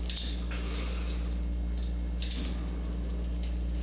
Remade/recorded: recorded